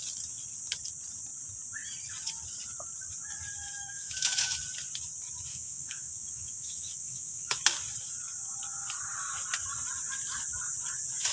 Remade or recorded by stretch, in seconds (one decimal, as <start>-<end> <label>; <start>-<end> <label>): 0.0-3.8 recorded; 3.8-4.6 remade; 4.6-5.5 recorded; 5.5-7.6 remade; 7.6-11.3 recorded